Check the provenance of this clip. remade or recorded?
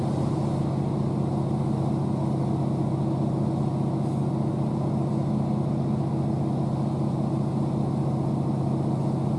recorded